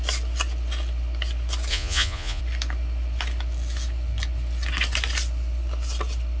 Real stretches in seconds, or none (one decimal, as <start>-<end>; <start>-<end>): 0.0-1.7; 2.4-6.4